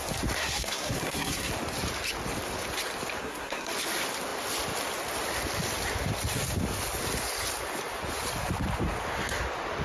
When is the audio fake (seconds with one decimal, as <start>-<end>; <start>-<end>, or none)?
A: 0.4-1.5; 3.2-3.7